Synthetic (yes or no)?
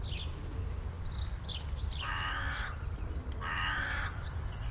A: no